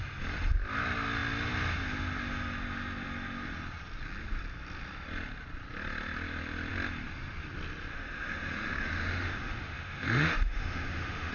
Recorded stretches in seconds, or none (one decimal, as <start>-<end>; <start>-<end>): 0.0-7.9